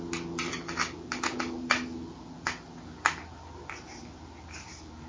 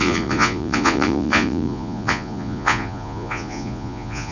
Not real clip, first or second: second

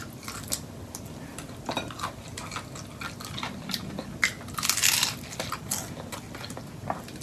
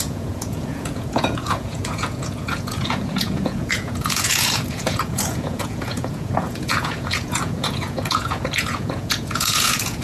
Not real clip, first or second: second